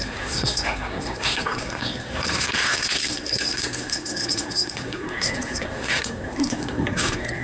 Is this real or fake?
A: fake